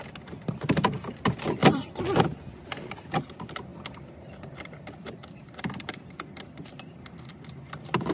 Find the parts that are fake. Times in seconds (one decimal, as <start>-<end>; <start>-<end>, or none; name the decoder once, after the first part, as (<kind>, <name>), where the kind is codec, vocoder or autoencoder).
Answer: 1.6-2.2 (vocoder, BigVGAN v2); 3.7-7.1